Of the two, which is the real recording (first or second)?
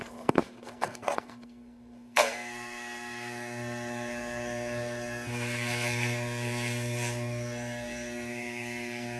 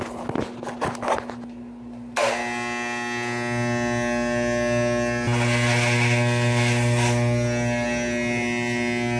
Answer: second